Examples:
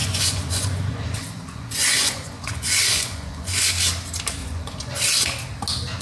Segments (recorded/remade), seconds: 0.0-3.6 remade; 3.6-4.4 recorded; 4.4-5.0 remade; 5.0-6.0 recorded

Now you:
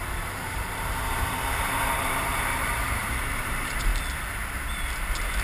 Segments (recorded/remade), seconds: 0.0-3.9 remade; 3.9-5.4 recorded